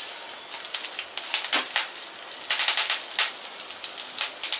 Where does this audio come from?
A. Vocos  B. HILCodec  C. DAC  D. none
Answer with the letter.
D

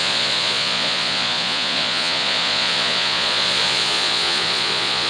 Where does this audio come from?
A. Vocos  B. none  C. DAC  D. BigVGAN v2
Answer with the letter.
A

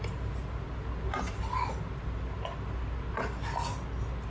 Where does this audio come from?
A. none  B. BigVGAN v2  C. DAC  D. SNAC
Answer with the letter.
A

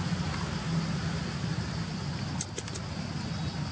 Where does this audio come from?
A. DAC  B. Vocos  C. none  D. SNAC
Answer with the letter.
C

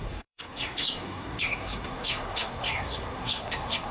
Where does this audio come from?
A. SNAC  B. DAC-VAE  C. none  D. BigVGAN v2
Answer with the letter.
A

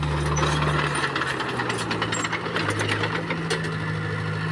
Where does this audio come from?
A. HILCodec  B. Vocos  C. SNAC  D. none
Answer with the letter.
D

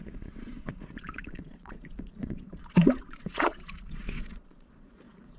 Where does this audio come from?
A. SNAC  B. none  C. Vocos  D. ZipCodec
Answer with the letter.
C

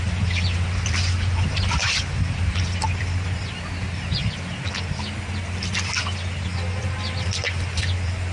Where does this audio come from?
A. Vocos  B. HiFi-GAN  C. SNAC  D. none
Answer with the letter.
D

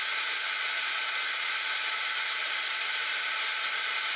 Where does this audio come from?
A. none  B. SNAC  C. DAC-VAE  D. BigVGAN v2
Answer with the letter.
A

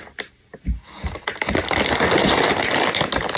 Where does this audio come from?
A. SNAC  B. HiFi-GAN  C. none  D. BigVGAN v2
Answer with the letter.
C